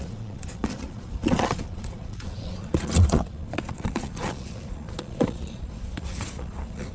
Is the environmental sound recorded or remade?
remade